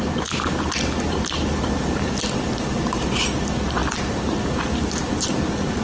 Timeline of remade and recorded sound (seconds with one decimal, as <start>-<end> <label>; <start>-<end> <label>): 0.0-5.8 remade